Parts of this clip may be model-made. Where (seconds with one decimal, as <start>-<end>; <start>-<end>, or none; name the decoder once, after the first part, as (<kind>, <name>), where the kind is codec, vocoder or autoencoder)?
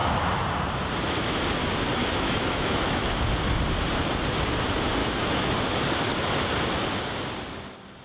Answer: 2.0-3.1 (autoencoder, DAC-VAE); 5.0-5.5